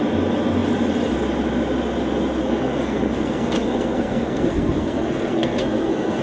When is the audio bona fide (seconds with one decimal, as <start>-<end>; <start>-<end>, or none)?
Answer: 0.0-2.4